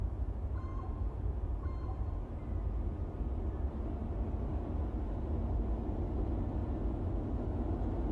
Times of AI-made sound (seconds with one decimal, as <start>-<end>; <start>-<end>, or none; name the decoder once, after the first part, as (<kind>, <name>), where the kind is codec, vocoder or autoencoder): none